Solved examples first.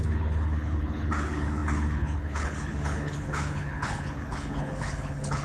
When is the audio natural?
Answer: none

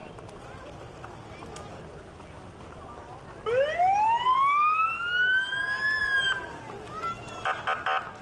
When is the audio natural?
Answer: 0.0-8.2

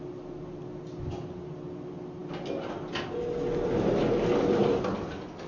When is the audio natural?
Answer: 0.0-5.5